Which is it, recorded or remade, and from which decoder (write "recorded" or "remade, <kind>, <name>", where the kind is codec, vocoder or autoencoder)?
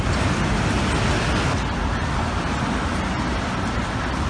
recorded